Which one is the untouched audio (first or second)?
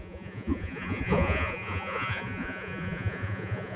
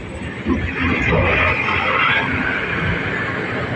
second